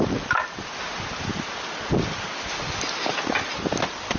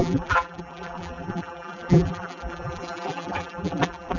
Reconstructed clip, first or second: second